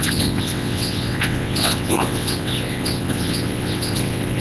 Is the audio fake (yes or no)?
yes